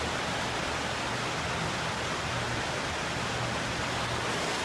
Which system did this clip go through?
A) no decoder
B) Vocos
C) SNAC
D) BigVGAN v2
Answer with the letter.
A